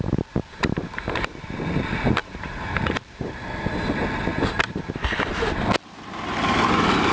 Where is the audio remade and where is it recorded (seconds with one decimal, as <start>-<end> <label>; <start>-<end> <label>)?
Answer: 0.0-0.6 recorded; 0.6-1.3 remade; 1.3-2.2 recorded; 2.2-3.7 remade; 3.7-7.1 recorded